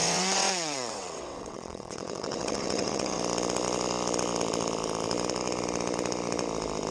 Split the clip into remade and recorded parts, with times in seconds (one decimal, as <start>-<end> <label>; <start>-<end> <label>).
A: 0.0-3.2 remade; 3.2-6.9 recorded